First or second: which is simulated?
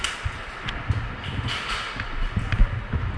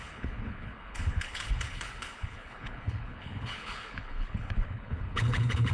second